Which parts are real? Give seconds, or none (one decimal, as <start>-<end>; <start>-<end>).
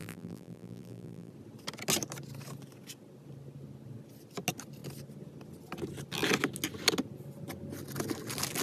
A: 1.3-8.6